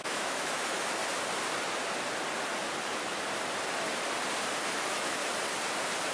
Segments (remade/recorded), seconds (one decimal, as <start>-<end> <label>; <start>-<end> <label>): 0.0-1.0 remade; 1.0-4.6 recorded; 4.6-5.2 remade; 5.2-6.1 recorded